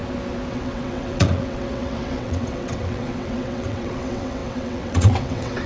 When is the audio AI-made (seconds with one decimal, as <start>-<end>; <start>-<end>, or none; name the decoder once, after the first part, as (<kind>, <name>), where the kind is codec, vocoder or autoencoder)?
0.5-5.7 (vocoder, WaveNeXt)